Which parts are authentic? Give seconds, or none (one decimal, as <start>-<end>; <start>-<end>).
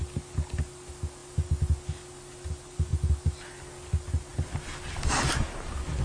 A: 0.0-6.0